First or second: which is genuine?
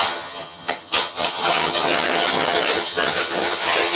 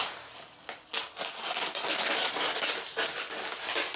second